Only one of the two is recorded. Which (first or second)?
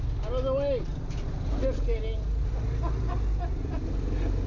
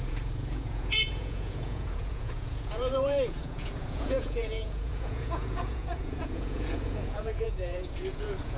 first